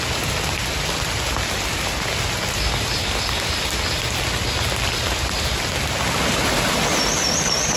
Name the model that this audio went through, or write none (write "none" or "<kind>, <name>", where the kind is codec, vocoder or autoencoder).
none